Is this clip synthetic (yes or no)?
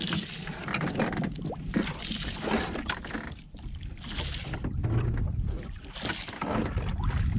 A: no